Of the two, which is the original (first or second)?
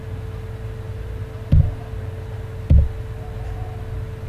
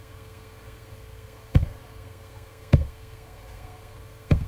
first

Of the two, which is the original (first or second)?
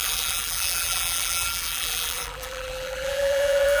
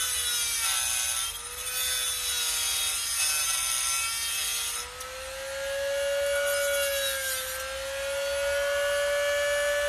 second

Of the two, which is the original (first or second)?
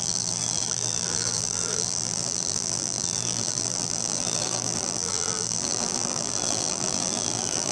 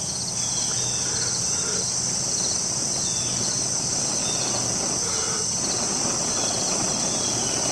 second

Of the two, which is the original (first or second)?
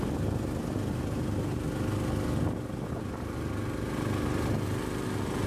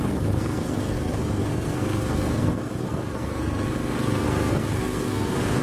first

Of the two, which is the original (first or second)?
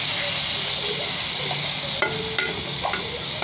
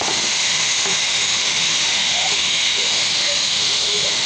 first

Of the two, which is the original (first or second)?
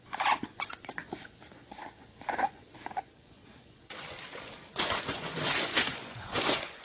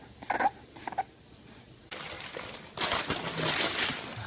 second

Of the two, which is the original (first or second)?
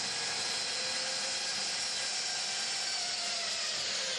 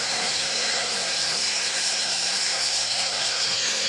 first